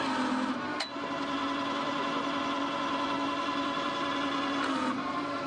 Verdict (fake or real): real